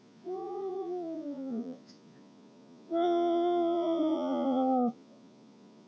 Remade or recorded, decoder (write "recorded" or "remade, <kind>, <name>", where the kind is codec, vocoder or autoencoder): remade, vocoder, Vocos